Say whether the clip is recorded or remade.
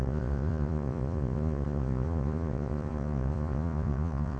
remade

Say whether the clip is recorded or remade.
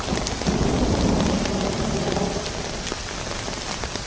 recorded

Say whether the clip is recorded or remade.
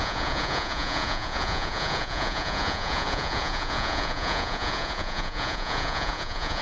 remade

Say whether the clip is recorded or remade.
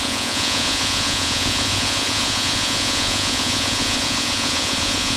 remade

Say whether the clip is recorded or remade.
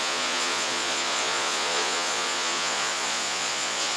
remade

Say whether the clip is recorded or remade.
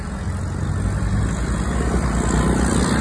recorded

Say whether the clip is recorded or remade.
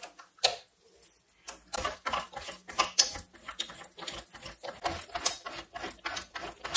recorded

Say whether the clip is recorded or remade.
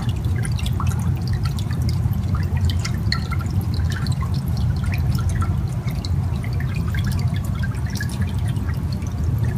recorded